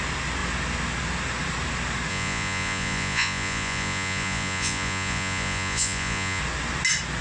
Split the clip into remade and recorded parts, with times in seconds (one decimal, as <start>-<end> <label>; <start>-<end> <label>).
0.0-2.1 recorded; 2.1-6.4 remade; 6.4-7.2 recorded

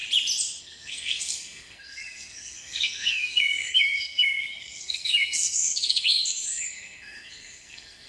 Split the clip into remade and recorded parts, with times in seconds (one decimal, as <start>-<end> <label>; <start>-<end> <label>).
0.0-0.6 recorded; 0.6-8.1 remade

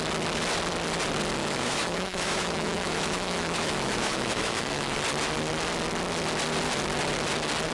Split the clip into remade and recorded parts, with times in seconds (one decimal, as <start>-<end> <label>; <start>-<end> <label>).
0.0-1.4 recorded; 1.4-5.0 remade; 5.0-7.7 recorded

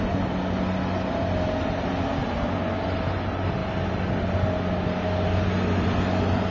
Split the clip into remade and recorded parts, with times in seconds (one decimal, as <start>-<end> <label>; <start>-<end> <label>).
0.0-6.5 recorded

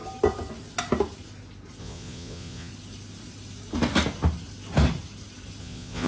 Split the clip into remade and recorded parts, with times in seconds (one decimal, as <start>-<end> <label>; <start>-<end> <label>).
0.0-1.8 recorded; 1.8-2.7 remade; 2.7-5.6 recorded; 5.6-6.1 remade

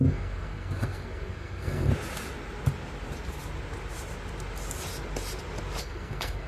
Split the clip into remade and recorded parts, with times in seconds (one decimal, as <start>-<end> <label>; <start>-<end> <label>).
0.0-1.9 remade; 1.9-5.8 recorded; 5.8-6.5 remade